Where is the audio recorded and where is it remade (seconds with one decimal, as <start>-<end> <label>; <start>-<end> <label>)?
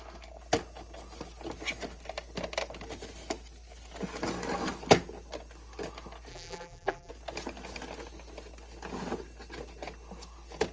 0.0-6.3 recorded; 6.3-7.1 remade; 7.1-10.7 recorded